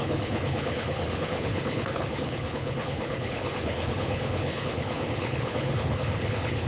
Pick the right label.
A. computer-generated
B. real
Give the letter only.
A